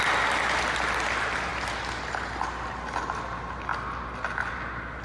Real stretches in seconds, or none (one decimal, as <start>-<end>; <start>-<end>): 0.0-5.0